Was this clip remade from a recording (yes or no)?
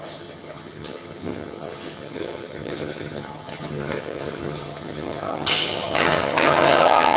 yes